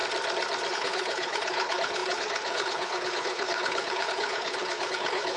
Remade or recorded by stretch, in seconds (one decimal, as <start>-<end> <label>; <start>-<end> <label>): 0.0-0.7 recorded; 0.7-5.4 remade